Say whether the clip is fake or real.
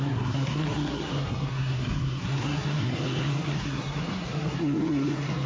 fake